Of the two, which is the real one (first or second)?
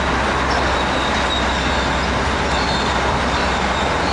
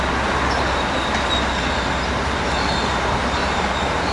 first